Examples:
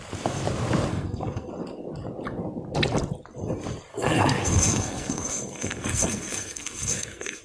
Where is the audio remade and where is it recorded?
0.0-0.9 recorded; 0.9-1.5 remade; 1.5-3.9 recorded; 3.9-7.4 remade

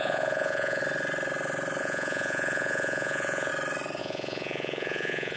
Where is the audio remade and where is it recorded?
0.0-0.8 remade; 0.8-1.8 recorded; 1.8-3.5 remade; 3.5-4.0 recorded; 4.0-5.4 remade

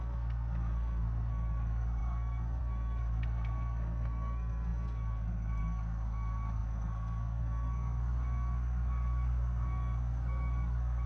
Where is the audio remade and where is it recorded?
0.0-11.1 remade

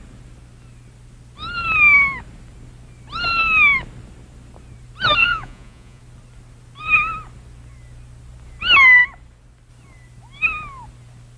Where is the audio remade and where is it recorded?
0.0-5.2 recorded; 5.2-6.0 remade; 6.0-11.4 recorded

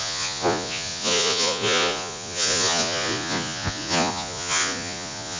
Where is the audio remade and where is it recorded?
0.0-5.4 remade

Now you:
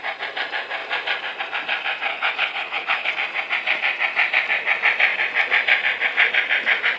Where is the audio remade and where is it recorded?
0.0-2.1 recorded; 2.1-3.1 remade; 3.1-7.0 recorded